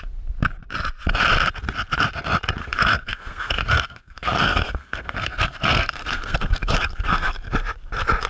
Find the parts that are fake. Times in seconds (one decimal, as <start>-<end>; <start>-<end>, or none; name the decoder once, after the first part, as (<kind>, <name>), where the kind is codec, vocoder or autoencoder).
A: 2.6-7.5 (codec, SNAC)